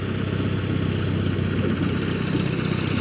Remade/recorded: recorded